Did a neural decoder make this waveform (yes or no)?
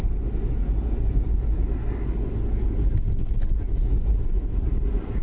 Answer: no